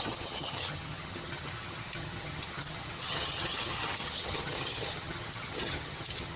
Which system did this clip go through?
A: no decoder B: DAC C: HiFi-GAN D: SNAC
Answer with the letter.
C